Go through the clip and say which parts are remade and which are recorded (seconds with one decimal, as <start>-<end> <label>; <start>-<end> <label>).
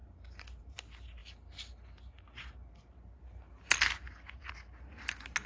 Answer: 0.0-5.5 recorded